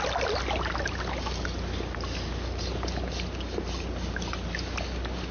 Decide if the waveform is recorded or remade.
recorded